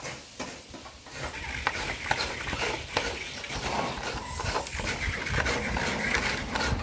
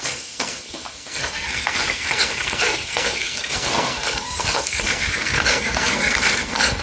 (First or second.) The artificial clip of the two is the second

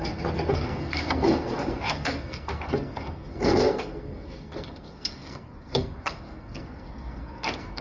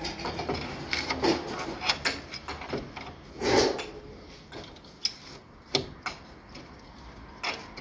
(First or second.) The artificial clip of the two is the first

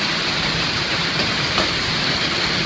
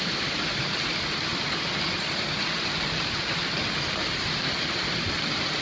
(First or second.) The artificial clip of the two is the first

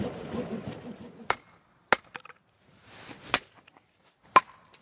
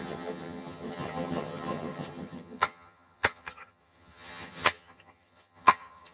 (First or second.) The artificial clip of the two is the second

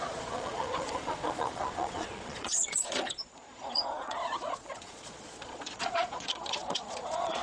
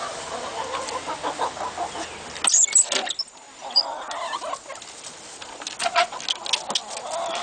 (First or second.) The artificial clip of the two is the first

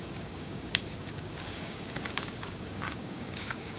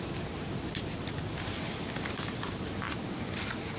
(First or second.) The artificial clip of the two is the first